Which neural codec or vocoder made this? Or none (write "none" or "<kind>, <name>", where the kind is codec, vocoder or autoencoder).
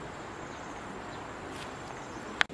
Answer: none